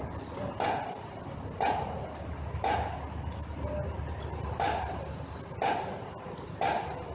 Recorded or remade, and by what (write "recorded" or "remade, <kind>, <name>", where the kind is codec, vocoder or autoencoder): recorded